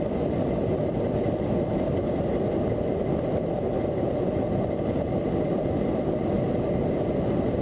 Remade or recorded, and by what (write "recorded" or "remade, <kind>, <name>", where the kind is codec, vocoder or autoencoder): recorded